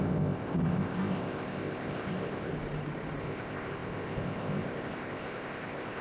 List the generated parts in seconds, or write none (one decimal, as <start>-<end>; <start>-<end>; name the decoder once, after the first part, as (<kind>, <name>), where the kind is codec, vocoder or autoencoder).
0.0-2.5 (codec, ZipCodec); 3.2-6.0